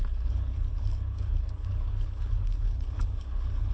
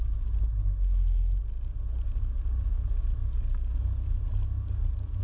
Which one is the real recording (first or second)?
second